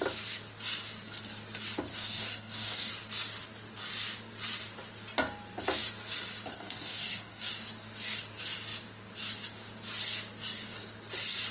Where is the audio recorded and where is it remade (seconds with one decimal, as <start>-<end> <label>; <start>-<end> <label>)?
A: 0.0-1.9 recorded; 1.9-2.9 remade; 2.9-6.5 recorded; 6.5-7.5 remade; 7.5-11.5 recorded